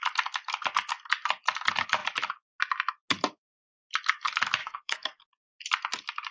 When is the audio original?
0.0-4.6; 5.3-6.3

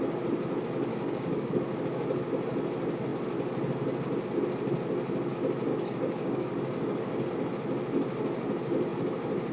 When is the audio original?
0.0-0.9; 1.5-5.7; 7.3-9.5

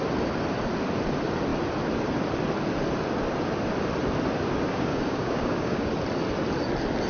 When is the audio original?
0.0-4.7; 5.9-7.1